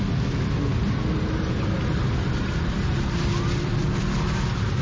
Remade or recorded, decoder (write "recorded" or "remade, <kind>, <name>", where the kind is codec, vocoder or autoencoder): recorded